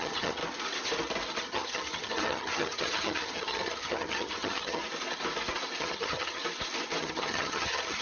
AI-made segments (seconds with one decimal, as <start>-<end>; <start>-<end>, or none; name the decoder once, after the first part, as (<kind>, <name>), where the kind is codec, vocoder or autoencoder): 0.0-0.4 (vocoder, HiFi-GAN); 1.4-4.8; 5.8-6.4; 7.0-8.0